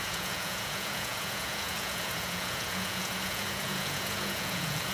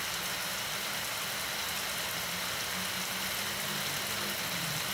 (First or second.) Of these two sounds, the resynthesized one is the first